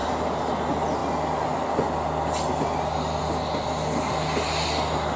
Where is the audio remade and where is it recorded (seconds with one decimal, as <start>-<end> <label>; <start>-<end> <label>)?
0.0-5.2 recorded